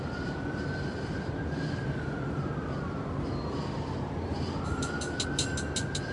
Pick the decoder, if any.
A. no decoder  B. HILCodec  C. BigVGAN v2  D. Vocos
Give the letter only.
A